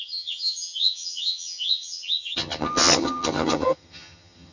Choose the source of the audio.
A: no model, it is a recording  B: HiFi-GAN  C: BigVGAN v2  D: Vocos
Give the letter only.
B